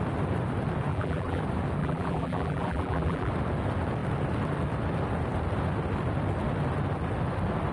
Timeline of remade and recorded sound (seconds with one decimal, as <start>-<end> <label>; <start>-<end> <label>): 0.0-0.9 recorded; 0.9-1.4 remade; 1.4-1.8 recorded; 1.8-3.3 remade; 3.3-7.7 recorded